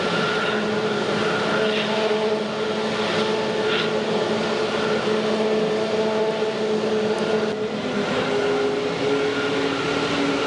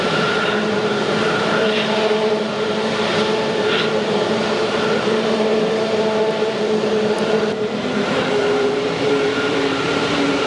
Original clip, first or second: first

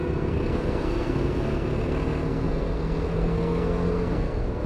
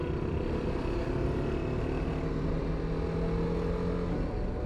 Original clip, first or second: second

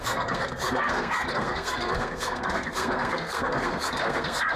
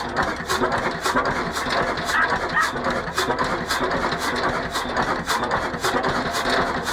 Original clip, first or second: second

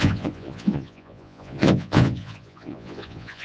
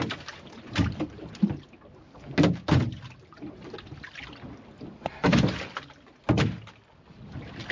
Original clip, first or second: second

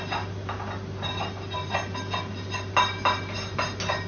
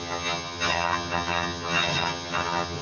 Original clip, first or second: first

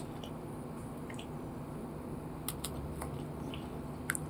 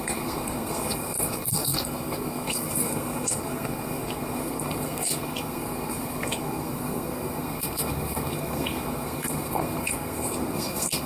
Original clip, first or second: first